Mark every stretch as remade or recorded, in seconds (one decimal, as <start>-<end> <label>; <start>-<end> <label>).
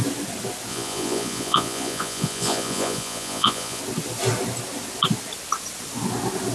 0.0-0.7 recorded; 0.7-3.8 remade; 3.8-6.5 recorded